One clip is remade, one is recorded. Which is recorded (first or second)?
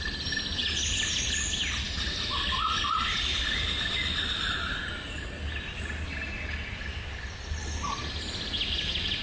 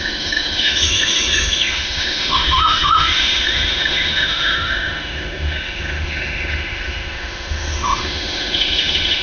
first